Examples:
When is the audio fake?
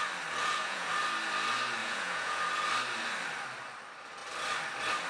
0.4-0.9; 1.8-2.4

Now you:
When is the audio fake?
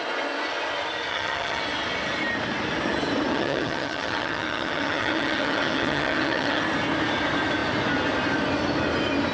1.1-1.6; 3.3-6.6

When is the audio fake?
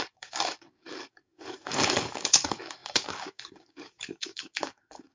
0.0-5.1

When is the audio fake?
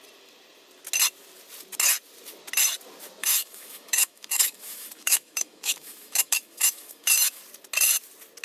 3.2-7.4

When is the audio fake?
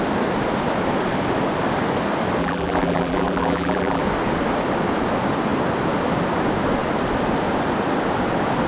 2.4-4.0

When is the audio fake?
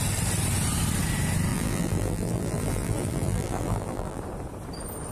1.5-4.2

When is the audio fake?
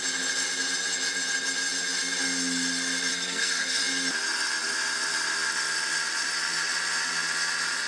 3.1-3.8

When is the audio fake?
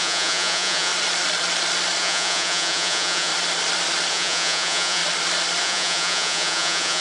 0.0-0.9; 2.0-3.3; 4.1-5.0; 5.6-7.0